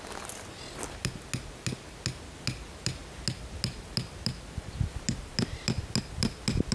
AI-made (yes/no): no